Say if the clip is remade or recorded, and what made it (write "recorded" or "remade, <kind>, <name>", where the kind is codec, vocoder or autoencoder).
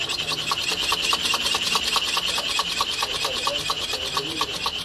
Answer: recorded